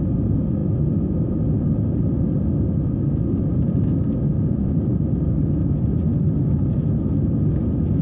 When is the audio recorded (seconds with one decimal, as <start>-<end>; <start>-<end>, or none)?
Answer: 0.0-8.0